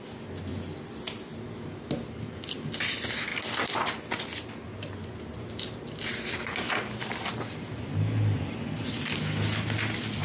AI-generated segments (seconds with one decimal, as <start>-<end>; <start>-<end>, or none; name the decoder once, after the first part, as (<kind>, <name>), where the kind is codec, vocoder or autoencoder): none